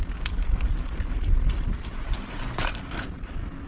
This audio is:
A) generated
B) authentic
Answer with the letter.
B